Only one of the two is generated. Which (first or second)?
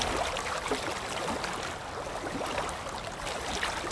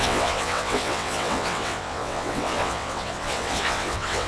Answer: second